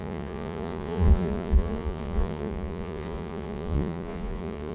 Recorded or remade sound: remade